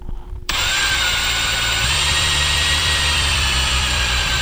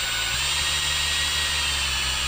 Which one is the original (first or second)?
second